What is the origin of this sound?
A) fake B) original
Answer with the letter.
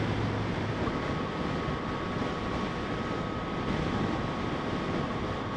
B